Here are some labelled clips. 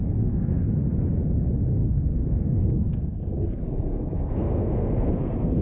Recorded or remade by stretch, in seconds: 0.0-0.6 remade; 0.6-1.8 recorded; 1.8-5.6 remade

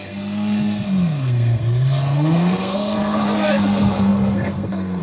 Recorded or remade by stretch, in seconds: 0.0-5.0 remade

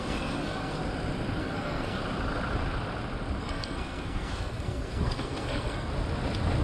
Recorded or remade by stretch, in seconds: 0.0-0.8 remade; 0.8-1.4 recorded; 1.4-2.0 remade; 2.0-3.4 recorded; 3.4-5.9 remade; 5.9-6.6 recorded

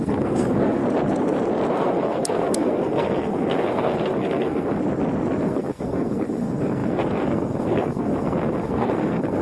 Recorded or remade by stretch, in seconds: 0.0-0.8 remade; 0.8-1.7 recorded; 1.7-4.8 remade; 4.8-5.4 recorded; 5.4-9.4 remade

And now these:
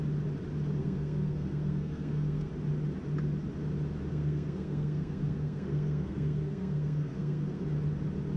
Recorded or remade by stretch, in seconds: 0.0-0.8 recorded; 0.8-2.5 remade; 2.5-4.1 recorded; 4.1-7.6 remade; 7.6-8.4 recorded